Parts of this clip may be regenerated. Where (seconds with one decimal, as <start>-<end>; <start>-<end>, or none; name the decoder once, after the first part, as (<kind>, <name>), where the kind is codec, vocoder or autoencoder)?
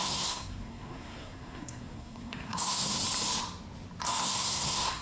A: 0.0-3.0 (codec, SNAC); 4.2-5.0